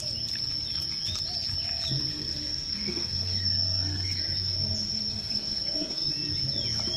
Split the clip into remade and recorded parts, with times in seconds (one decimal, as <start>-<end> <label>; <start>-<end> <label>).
0.0-2.1 recorded; 2.1-4.2 remade; 4.2-5.1 recorded; 5.1-6.1 remade; 6.1-7.0 recorded